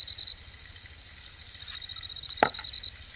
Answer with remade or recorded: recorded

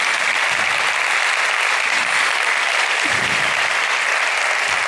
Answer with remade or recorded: recorded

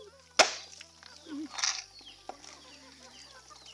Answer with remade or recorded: recorded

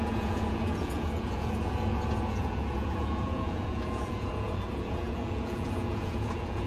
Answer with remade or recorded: remade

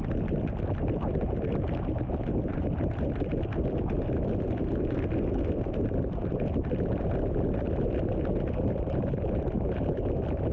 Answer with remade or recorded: recorded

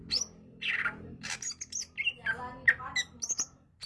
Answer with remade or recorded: recorded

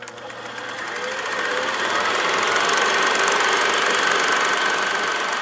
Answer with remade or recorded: recorded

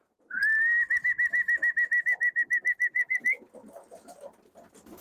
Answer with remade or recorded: recorded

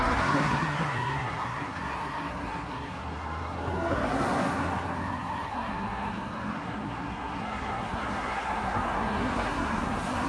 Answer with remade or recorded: remade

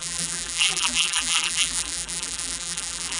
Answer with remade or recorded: remade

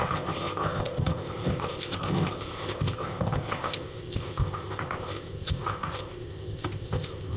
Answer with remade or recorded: remade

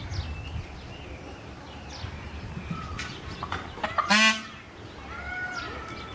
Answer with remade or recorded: recorded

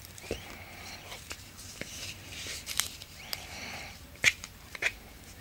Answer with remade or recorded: remade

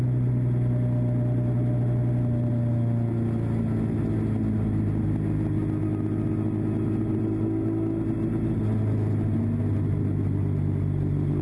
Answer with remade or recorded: recorded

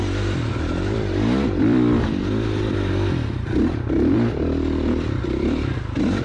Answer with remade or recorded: remade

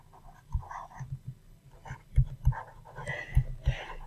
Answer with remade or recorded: recorded